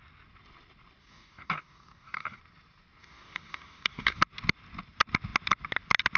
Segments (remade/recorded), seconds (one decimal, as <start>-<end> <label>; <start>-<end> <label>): 0.0-1.0 recorded; 1.0-2.4 remade; 2.4-3.0 recorded; 3.0-4.2 remade; 4.2-6.2 recorded